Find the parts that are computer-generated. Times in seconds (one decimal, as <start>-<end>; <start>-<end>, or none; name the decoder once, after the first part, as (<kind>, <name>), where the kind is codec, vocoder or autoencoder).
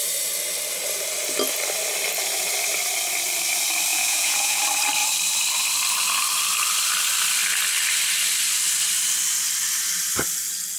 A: 3.9-4.6 (vocoder, Vocos)